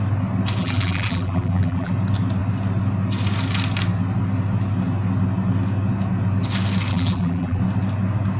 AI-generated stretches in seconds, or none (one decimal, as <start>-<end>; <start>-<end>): 0.6-1.9; 6.9-7.6